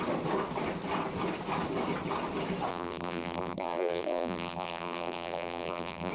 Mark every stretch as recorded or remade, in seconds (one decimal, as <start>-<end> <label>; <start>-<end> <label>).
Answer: 0.0-2.7 recorded; 2.7-6.1 remade